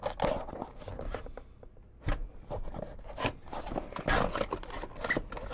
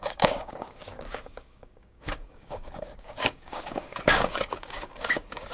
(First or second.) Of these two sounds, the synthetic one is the second